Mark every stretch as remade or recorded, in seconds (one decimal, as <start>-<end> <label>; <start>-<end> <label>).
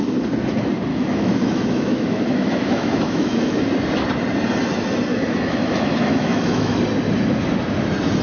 0.0-0.9 recorded; 0.9-3.6 remade; 3.6-5.1 recorded; 5.1-6.8 remade; 6.8-8.2 recorded